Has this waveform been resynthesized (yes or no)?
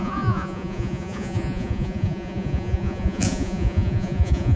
yes